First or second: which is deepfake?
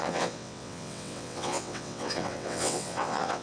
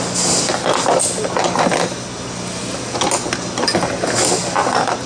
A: first